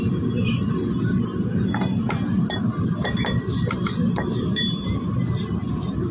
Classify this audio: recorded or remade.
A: recorded